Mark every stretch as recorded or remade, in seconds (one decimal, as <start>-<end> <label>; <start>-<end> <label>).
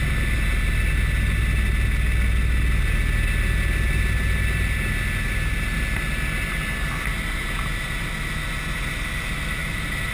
0.0-10.1 recorded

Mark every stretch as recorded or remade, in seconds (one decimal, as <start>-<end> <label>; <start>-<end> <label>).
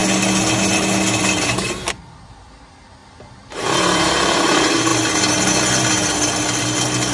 0.0-3.0 recorded; 3.0-4.1 remade; 4.1-7.1 recorded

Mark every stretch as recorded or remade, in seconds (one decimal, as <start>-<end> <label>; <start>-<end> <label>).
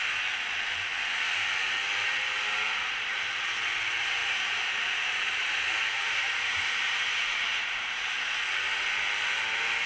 0.0-4.2 recorded; 4.2-8.4 remade; 8.4-9.9 recorded